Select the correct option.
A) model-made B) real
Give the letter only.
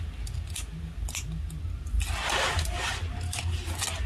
B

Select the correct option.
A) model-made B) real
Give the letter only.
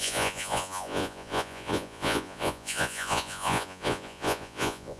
A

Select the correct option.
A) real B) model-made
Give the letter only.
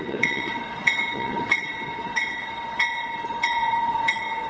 B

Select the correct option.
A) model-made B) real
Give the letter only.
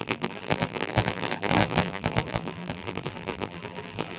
A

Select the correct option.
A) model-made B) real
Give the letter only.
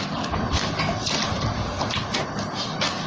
B